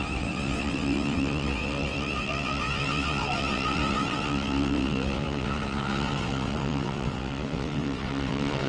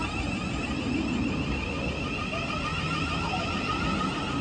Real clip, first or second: second